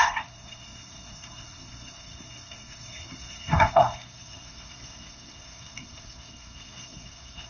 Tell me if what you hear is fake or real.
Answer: fake